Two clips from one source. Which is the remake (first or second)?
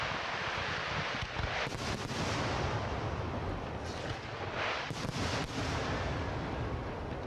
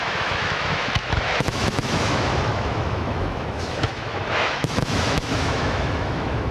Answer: second